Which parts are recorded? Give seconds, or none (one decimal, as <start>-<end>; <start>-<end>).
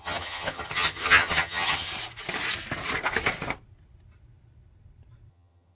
1.9-5.3